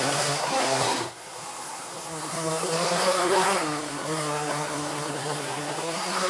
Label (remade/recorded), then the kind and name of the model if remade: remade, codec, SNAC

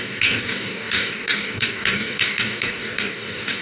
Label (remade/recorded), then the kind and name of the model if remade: remade, codec, DAC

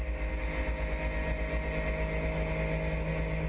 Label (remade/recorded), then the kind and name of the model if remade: recorded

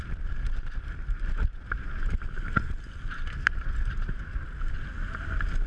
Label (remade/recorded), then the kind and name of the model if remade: recorded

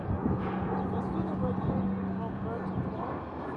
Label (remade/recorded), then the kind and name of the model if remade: recorded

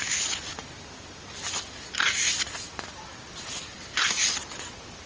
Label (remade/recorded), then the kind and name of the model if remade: recorded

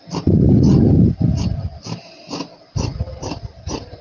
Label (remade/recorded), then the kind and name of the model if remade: recorded